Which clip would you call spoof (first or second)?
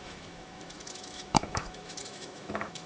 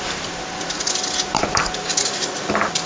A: first